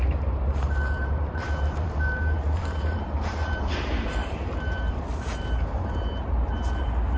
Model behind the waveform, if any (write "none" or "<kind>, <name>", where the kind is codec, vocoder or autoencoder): vocoder, BigVGAN v2